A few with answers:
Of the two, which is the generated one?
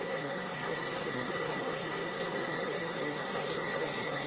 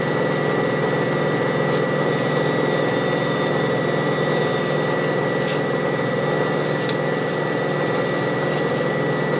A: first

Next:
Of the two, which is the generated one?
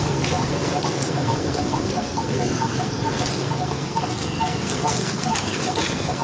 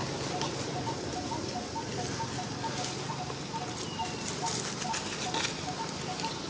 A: first